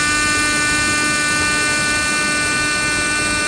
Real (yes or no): yes